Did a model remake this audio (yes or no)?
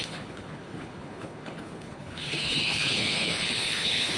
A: yes